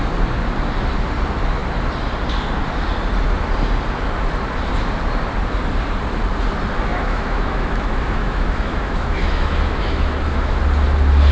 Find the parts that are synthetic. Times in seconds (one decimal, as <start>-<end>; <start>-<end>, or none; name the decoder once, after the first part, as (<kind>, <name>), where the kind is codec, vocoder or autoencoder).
6.9-10.6 (autoencoder, DAC-VAE)